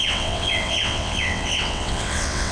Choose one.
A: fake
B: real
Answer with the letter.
A